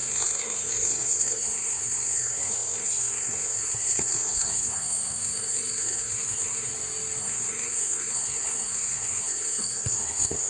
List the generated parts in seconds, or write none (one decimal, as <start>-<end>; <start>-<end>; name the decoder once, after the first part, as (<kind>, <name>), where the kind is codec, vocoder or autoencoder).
0.0-6.7 (codec, SNAC); 7.2-10.5